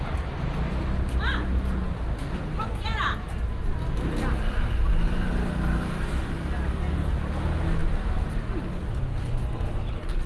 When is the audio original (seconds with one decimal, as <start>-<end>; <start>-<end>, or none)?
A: 0.0-10.3